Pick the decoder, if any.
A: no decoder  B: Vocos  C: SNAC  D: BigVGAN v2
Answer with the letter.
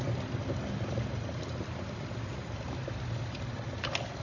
D